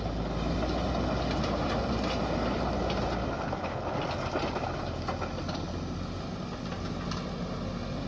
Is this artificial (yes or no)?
no